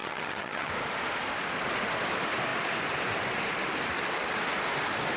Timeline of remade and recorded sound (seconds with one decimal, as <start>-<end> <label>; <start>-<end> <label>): 0.0-0.7 remade; 0.7-5.2 recorded